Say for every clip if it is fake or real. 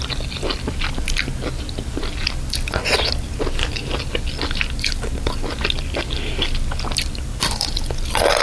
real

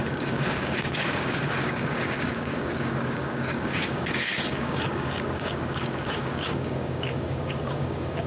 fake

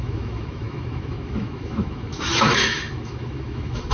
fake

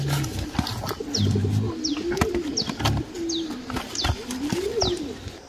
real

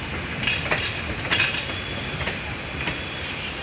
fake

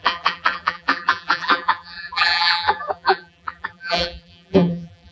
fake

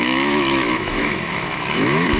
fake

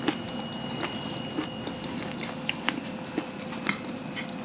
real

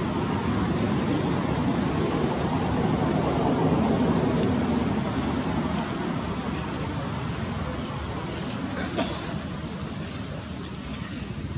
real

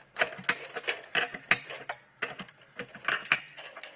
real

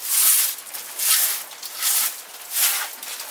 real